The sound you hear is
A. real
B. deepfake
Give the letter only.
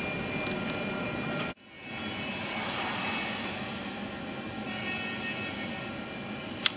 A